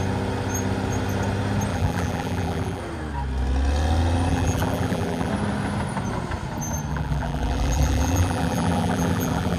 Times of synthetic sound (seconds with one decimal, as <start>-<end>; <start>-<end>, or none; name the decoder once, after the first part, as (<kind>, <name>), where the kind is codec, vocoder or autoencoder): 1.7-2.8 (vocoder, BigVGAN v2); 4.3-5.3; 6.9-9.6